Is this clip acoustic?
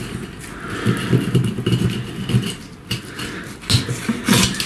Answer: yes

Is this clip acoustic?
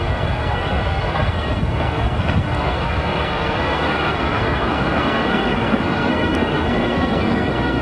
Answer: no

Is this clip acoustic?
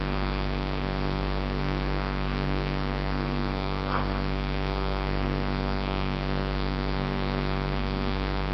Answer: no